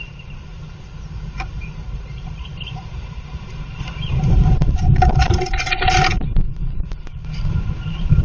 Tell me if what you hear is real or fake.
fake